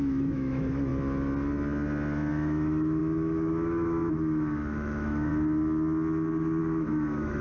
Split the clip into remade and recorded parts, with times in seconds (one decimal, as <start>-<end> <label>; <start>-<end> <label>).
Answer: 0.0-0.9 remade; 0.9-2.3 recorded; 2.3-5.3 remade; 5.3-6.6 recorded; 6.6-7.4 remade

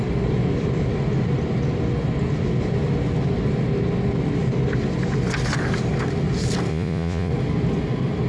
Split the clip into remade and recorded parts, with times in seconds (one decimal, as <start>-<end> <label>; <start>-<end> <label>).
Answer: 0.0-6.7 recorded; 6.7-7.3 remade; 7.3-8.3 recorded

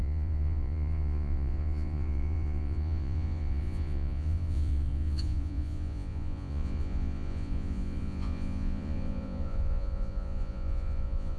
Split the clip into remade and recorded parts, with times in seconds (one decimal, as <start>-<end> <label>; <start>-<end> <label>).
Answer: 0.0-11.4 remade

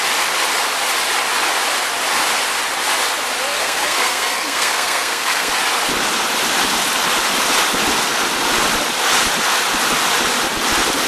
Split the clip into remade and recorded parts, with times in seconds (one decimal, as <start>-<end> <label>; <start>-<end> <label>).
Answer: 0.0-3.5 recorded; 3.5-5.5 remade; 5.5-11.1 recorded

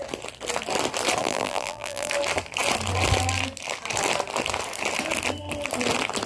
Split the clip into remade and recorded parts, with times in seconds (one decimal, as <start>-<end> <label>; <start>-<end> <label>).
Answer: 0.0-1.2 recorded; 1.2-2.1 remade; 2.1-6.3 recorded

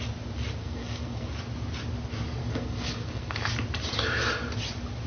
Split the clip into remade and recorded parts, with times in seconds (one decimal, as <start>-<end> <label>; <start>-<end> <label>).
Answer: 0.0-0.6 recorded; 0.6-1.3 remade; 1.3-2.4 recorded; 2.4-3.5 remade; 3.5-5.1 recorded

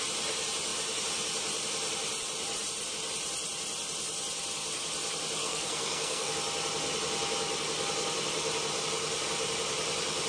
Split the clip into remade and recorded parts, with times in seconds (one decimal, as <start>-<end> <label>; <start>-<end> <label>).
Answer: 0.0-5.4 recorded; 5.4-6.3 remade; 6.3-10.3 recorded

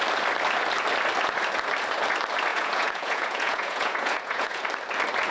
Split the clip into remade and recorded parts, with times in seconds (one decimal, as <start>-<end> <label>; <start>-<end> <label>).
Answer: 0.0-2.5 recorded; 2.5-4.6 remade; 4.6-5.3 recorded